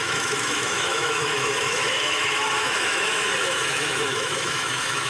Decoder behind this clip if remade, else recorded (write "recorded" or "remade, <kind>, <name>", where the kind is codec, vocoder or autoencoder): remade, autoencoder, DAC-VAE